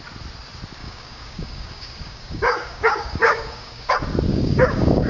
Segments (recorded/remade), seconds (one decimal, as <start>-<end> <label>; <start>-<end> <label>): 0.0-0.8 recorded; 0.8-3.9 remade; 3.9-4.3 recorded; 4.3-5.1 remade